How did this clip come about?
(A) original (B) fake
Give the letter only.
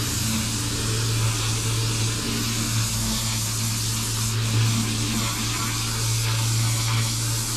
A